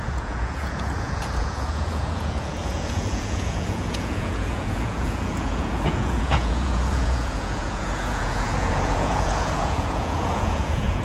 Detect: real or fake fake